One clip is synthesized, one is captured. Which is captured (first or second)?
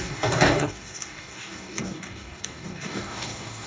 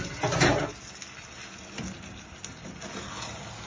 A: second